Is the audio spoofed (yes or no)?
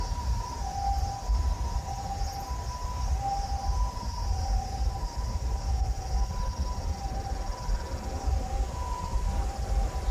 no